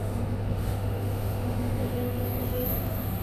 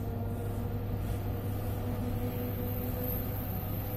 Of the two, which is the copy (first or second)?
first